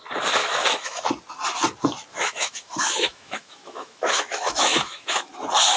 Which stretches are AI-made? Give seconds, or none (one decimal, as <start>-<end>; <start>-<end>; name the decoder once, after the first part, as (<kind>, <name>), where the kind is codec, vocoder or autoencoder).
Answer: 0.4-1.0 (autoencoder, DAC-VAE); 2.1-5.3